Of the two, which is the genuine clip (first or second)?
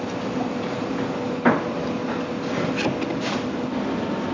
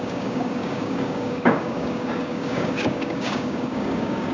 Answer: first